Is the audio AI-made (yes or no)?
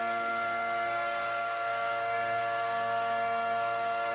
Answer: yes